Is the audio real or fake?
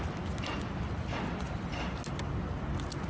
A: real